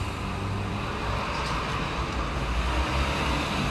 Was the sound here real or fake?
real